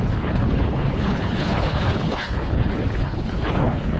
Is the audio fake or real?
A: fake